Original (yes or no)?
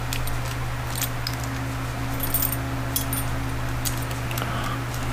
yes